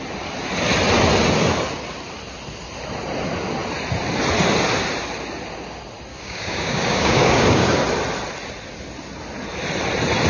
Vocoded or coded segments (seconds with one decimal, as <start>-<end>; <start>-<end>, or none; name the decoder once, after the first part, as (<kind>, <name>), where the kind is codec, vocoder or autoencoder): 6.1-7.8 (codec, DAC)